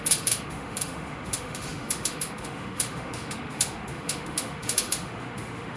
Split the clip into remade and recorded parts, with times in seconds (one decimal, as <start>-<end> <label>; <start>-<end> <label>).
0.0-5.8 remade